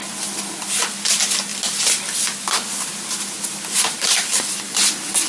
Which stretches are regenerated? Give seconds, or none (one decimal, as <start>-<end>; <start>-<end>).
none